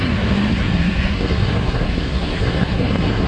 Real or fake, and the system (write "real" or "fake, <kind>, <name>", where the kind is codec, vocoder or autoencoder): fake, codec, SNAC